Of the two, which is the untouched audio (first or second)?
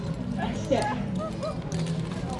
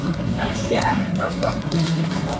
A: first